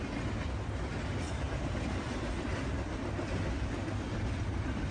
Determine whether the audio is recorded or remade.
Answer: recorded